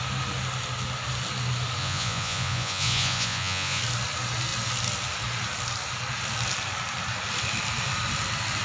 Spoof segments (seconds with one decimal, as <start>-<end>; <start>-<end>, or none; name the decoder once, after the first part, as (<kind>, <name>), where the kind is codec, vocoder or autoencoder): 1.8-3.8 (vocoder, Vocos)